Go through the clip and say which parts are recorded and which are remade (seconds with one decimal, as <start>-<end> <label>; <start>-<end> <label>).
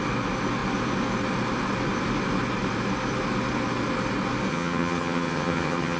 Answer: 0.0-4.5 recorded; 4.5-6.0 remade